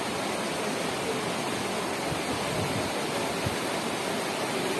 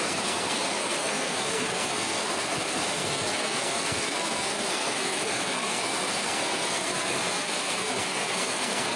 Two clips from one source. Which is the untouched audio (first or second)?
first